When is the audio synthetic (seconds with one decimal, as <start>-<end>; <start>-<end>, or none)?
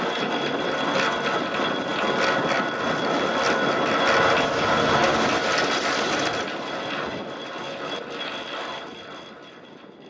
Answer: 7.2-8.7